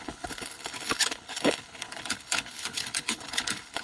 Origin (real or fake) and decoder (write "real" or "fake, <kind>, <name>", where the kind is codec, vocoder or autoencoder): fake, codec, HILCodec